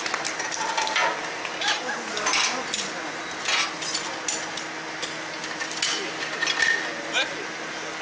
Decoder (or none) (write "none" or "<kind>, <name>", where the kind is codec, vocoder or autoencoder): none